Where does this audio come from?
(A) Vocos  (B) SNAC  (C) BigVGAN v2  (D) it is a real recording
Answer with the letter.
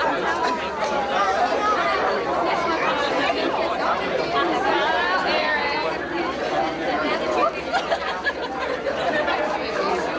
D